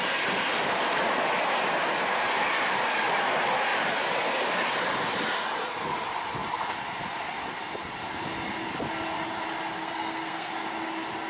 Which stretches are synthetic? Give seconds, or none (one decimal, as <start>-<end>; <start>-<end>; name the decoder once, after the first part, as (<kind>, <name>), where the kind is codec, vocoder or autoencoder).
9.8-10.5 (codec, SNAC)